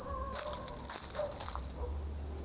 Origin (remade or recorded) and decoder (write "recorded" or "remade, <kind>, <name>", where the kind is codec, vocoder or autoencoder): recorded